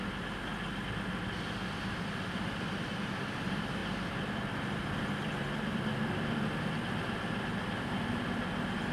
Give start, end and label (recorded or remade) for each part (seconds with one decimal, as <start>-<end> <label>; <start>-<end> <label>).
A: 0.0-0.5 remade; 0.5-1.9 recorded; 1.9-8.9 remade

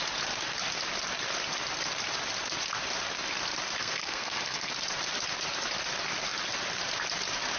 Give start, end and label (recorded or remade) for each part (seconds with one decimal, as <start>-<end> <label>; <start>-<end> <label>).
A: 0.0-3.8 recorded; 3.8-4.7 remade; 4.7-7.6 recorded

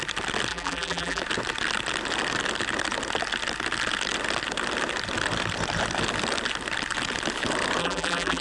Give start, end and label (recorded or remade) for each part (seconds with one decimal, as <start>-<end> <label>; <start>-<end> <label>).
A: 0.0-0.5 recorded; 0.5-1.2 remade; 1.2-7.8 recorded; 7.8-8.4 remade

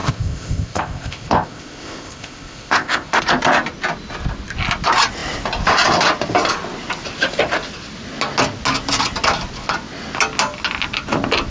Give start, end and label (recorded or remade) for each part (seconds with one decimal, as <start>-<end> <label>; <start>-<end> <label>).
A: 0.0-3.2 remade; 3.2-11.5 recorded

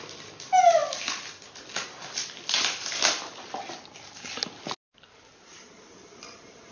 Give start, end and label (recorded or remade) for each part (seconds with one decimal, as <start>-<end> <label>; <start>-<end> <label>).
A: 0.0-6.7 recorded

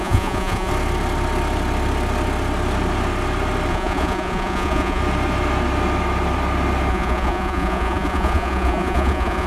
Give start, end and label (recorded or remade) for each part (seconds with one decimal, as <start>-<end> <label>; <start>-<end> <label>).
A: 0.0-0.7 remade; 0.7-3.7 recorded; 3.7-5.0 remade; 5.0-6.9 recorded; 6.9-9.5 remade

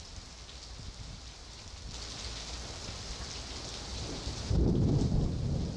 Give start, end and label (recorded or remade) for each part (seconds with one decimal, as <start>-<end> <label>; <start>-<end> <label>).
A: 0.0-3.9 recorded; 3.9-5.1 remade; 5.1-5.8 recorded

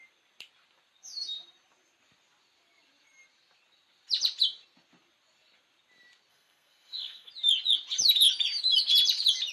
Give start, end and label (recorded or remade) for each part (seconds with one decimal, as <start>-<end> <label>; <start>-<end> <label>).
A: 0.0-6.3 recorded; 6.3-7.3 remade; 7.3-9.5 recorded